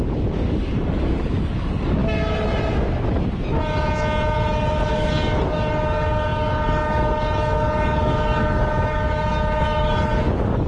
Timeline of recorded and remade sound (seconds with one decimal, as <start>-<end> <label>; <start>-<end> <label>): 0.0-2.0 remade; 2.0-4.9 recorded; 4.9-10.7 remade